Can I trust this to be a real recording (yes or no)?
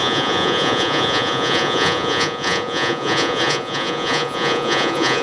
no